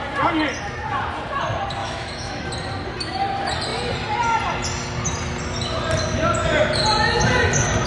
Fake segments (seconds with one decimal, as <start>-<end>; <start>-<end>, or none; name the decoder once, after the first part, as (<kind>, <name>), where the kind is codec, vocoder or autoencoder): 1.8-2.4 (autoencoder, DAC-VAE)